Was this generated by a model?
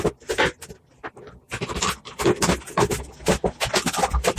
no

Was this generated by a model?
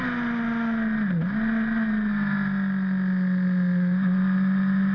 no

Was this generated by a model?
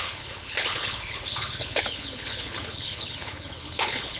yes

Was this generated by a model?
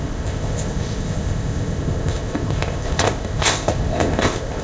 yes